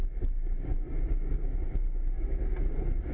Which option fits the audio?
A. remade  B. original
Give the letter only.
B